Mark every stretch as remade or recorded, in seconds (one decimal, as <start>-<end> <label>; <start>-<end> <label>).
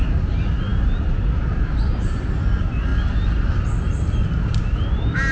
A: 0.0-5.3 recorded